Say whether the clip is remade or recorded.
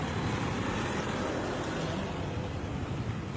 recorded